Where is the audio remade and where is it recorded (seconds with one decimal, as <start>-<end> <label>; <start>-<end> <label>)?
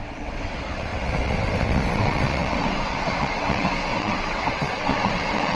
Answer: 0.0-5.6 remade